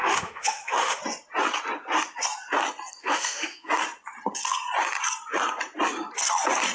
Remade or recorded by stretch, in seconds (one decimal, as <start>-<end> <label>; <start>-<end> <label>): 0.0-1.0 remade; 1.0-3.0 recorded; 3.0-3.7 remade; 3.7-6.7 recorded